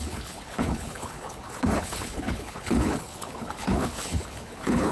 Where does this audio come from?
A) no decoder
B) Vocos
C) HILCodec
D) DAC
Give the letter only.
C